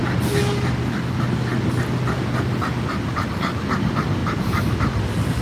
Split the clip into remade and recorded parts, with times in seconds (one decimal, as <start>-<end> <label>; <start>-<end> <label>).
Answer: 0.0-4.2 recorded; 4.2-4.9 remade; 4.9-5.4 recorded

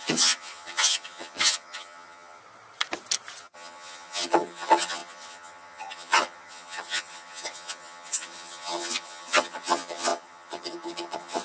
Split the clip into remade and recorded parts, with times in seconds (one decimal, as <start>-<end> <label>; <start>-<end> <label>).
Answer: 0.0-2.4 remade; 2.4-3.4 recorded; 3.4-11.4 remade

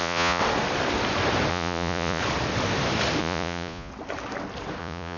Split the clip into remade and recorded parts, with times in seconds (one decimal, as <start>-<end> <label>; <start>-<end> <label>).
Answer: 0.0-0.4 remade; 0.4-1.5 recorded; 1.5-2.2 remade; 2.2-3.2 recorded; 3.2-3.9 remade; 3.9-4.8 recorded; 4.8-5.2 remade

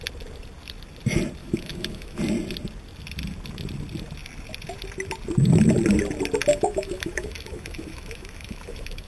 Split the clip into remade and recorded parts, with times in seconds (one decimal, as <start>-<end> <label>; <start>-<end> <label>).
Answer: 0.0-1.4 recorded; 1.4-2.2 remade; 2.2-6.5 recorded; 6.5-9.1 remade

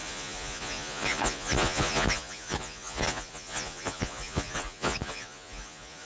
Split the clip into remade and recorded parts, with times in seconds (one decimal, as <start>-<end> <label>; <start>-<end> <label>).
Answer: 0.0-6.0 remade

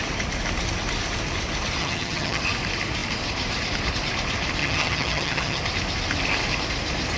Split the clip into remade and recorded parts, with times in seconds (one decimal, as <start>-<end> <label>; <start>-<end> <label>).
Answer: 0.0-1.8 recorded; 1.8-2.4 remade; 2.4-4.6 recorded; 4.6-5.6 remade; 5.6-7.2 recorded